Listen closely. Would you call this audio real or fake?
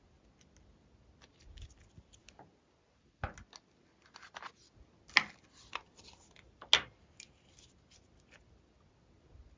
real